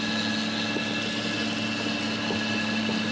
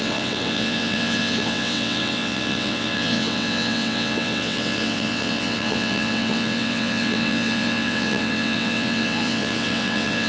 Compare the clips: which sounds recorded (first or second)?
first